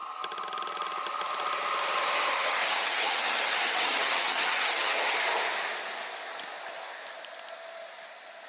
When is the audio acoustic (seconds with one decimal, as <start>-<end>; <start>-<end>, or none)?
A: 0.0-2.3; 5.2-8.5